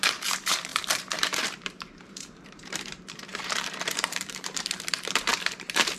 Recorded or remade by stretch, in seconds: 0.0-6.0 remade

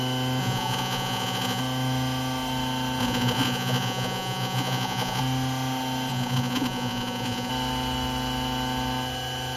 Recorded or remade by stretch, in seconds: 0.0-0.4 recorded; 0.4-1.6 remade; 1.6-3.0 recorded; 3.0-5.2 remade; 5.2-6.1 recorded; 6.1-7.5 remade; 7.5-9.6 recorded

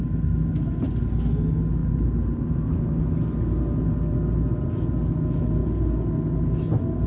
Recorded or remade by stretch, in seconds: 0.0-7.1 recorded

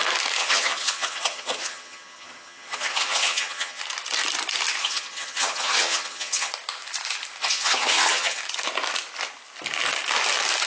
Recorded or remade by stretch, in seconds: 0.0-0.4 recorded; 0.4-3.8 remade; 3.8-4.8 recorded; 4.8-6.5 remade; 6.5-7.4 recorded; 7.4-8.4 remade; 8.4-10.7 recorded